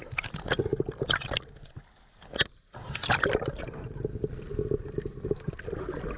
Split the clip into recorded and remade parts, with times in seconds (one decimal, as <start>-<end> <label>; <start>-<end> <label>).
0.0-6.2 recorded